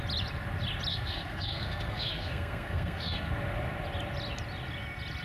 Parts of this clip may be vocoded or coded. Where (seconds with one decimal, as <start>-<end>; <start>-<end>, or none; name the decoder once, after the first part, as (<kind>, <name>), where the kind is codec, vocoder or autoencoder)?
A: 0.9-3.3 (codec, SNAC)